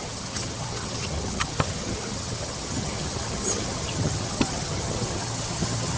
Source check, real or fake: fake